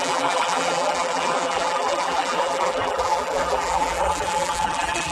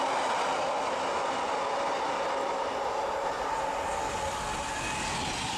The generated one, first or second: first